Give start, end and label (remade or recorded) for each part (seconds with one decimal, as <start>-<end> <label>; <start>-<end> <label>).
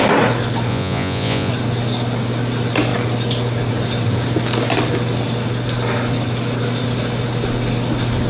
0.0-0.7 recorded; 0.7-1.5 remade; 1.5-8.3 recorded